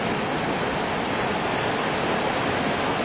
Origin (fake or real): real